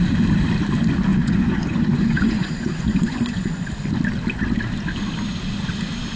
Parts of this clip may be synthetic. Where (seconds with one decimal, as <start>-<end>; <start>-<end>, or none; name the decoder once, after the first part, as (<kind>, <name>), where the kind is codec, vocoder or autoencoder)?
1.1-3.7 (vocoder, Vocos)